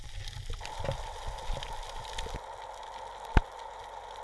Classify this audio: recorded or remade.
recorded